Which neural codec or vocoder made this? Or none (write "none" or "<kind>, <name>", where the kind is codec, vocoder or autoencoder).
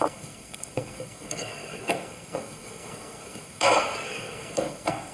codec, SNAC